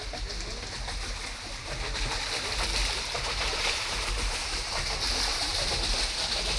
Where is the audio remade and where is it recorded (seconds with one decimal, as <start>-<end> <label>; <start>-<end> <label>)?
0.0-2.8 recorded; 2.8-4.7 remade; 4.7-5.3 recorded; 5.3-6.0 remade; 6.0-6.6 recorded